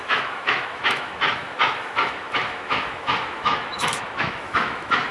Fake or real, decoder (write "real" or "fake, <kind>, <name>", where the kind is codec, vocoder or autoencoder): fake, autoencoder, DAC-VAE